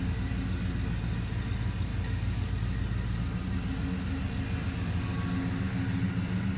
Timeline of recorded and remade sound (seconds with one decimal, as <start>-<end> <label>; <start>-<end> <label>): 0.0-1.9 recorded; 1.9-2.5 remade; 2.5-6.6 recorded